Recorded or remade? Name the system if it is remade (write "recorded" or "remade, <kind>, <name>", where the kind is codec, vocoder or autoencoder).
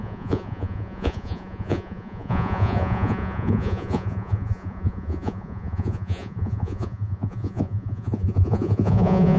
remade, vocoder, Vocos